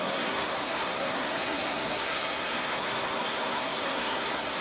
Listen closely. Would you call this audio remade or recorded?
remade